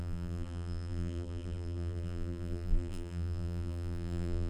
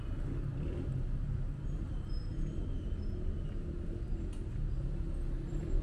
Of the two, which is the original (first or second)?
second